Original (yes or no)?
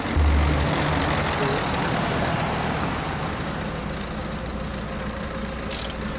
yes